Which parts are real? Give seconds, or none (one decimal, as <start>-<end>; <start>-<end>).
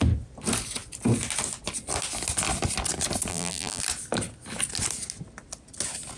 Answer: 0.0-3.3; 3.8-6.2